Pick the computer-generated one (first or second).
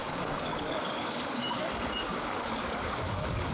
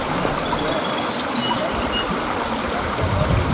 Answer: first